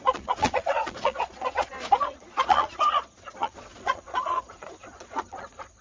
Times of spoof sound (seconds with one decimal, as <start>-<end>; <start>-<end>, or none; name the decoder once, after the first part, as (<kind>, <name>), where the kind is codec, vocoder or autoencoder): 0.0-5.8 (vocoder, Vocos)

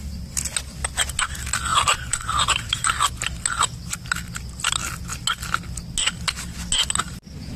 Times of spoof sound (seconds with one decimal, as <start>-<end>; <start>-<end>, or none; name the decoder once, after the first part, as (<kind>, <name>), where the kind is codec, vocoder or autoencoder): 1.7-2.9 (vocoder, BigVGAN v2)

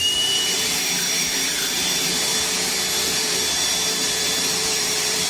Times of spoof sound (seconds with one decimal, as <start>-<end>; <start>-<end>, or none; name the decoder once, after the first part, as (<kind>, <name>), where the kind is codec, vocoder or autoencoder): 0.0-5.3 (vocoder, BigVGAN v2)